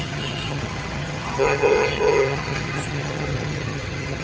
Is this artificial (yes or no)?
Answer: yes